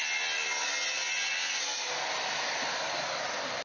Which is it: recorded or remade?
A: recorded